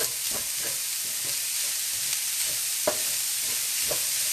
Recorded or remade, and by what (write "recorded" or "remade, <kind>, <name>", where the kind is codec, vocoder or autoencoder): recorded